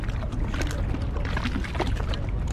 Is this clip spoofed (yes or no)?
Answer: no